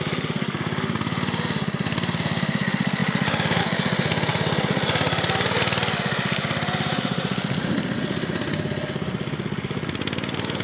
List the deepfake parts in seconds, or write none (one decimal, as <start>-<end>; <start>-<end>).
none